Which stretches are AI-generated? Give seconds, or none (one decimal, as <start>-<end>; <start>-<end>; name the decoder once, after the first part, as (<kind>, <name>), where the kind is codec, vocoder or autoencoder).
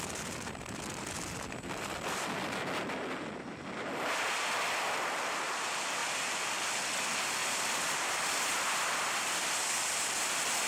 7.4-8.6 (vocoder, BigVGAN v2)